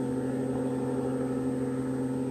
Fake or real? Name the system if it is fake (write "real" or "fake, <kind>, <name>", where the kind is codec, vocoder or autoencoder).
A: real